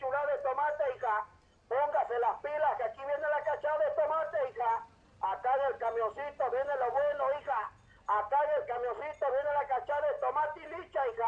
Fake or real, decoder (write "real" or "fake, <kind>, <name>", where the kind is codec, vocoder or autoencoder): real